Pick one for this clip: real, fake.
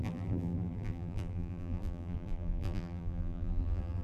fake